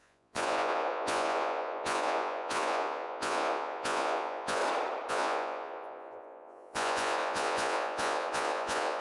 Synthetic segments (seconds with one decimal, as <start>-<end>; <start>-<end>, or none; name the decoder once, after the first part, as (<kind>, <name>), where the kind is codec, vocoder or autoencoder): 0.0-4.6 (vocoder, Vocos); 5.1-9.0